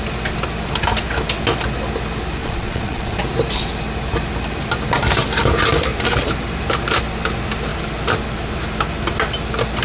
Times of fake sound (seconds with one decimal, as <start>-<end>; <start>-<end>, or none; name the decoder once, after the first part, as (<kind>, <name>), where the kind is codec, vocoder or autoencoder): 2.4-3.2 (vocoder, Vocos)